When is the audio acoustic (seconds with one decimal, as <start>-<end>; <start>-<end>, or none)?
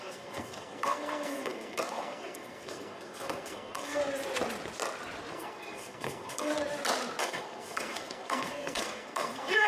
4.0-5.3; 6.5-7.2